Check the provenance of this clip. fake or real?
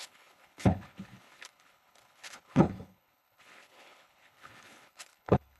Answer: fake